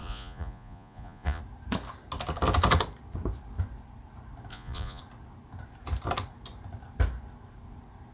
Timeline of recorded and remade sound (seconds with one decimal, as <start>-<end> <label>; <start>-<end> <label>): 0.0-1.4 remade; 1.4-4.5 recorded; 4.5-5.0 remade; 5.0-8.1 recorded